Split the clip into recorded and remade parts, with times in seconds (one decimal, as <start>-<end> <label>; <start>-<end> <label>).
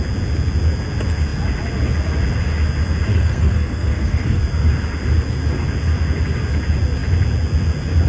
0.0-3.1 recorded; 3.1-4.4 remade; 4.4-8.1 recorded